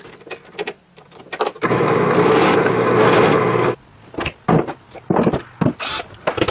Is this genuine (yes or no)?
yes